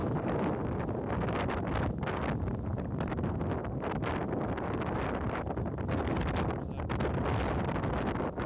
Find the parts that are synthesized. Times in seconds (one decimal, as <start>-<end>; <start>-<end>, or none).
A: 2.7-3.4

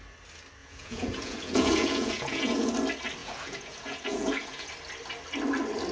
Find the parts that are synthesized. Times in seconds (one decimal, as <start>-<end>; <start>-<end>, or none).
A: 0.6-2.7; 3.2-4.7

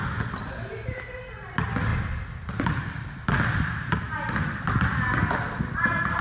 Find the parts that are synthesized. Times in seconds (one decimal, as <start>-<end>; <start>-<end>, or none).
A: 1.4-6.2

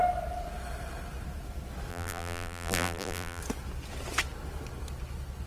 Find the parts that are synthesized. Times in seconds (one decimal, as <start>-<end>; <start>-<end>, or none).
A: 1.9-3.4

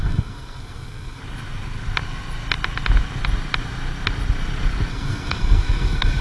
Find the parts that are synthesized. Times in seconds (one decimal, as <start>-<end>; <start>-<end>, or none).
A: 0.0-1.2; 4.9-6.2

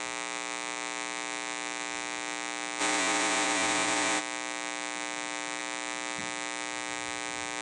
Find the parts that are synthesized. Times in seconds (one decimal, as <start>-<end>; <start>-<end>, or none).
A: 2.8-4.2